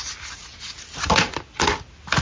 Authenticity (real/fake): real